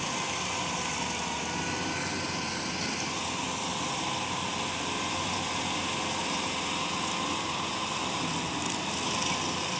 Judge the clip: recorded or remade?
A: recorded